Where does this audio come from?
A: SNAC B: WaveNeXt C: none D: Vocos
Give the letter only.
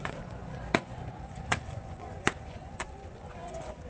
D